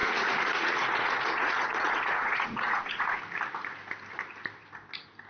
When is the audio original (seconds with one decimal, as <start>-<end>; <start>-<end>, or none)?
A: 3.2-5.3